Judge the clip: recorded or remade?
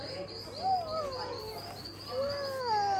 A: recorded